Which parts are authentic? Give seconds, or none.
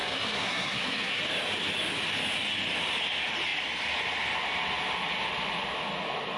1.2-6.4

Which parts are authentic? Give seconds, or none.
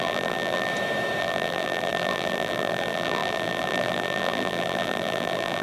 0.7-1.2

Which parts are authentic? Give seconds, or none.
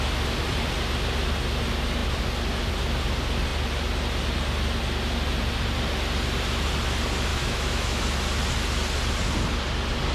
0.0-7.3; 8.0-10.1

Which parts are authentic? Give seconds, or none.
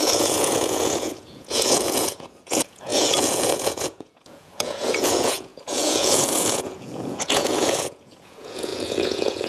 none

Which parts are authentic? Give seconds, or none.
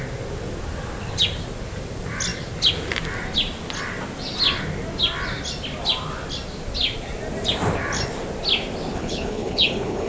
0.0-8.9